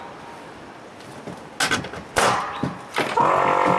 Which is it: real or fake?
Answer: real